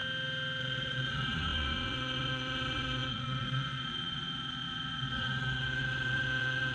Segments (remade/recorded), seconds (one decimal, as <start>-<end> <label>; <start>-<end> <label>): 0.0-0.6 recorded; 0.6-6.7 remade